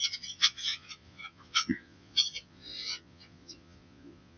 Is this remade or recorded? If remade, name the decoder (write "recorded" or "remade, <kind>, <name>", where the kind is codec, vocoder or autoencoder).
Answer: remade, vocoder, Vocos